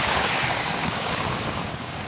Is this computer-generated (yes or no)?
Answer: yes